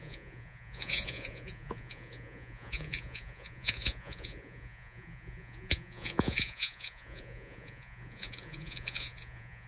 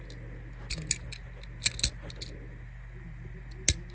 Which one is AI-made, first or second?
first